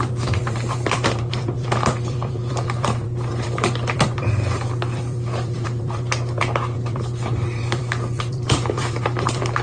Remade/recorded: remade